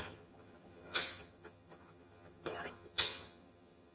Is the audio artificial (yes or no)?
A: yes